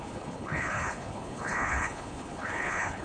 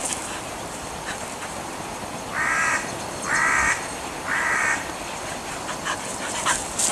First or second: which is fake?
first